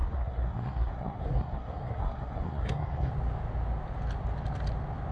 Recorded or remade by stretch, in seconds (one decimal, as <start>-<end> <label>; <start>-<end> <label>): 0.0-3.1 remade; 3.1-5.1 recorded